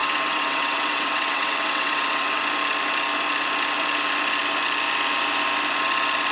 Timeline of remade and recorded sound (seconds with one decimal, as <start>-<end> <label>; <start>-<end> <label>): 0.0-2.4 remade; 2.4-6.3 recorded

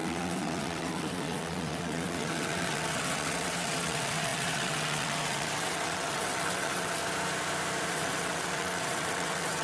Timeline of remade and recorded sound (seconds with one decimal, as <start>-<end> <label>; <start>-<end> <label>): 0.0-7.0 remade; 7.0-7.9 recorded; 7.9-9.6 remade

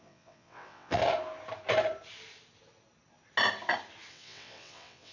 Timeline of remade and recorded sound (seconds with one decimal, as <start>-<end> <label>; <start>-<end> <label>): 0.0-1.0 remade; 1.0-4.1 recorded; 4.1-5.1 remade